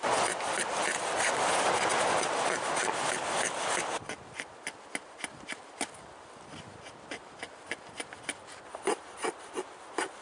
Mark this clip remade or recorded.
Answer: recorded